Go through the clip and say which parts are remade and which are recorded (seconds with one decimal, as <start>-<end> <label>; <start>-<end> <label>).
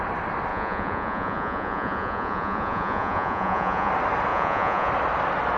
0.0-0.5 recorded; 0.5-3.9 remade; 3.9-4.3 recorded; 4.3-4.9 remade; 4.9-5.6 recorded